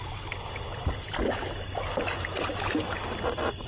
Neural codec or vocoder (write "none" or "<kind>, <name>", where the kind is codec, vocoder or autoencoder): none